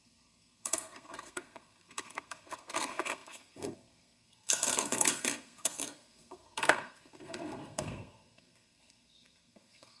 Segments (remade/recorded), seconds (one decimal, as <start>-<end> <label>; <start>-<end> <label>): 0.0-10.0 remade